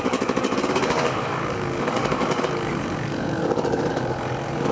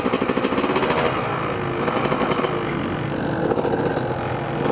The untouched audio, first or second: second